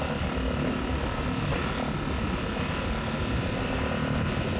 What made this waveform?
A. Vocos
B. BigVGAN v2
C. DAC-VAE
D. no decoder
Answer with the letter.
D